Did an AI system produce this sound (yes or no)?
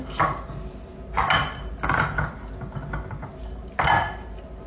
no